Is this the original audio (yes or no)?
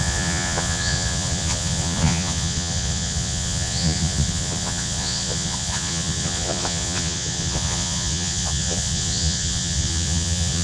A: no